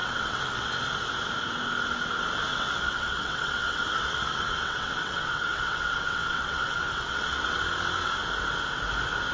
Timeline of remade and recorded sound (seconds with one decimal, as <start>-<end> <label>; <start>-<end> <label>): 0.0-0.7 remade; 0.7-2.5 recorded; 2.5-7.6 remade; 7.6-9.3 recorded